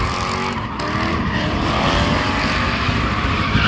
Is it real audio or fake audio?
real